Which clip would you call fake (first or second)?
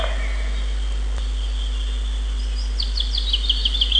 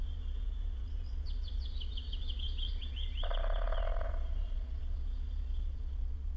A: second